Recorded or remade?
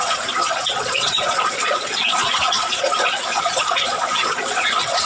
remade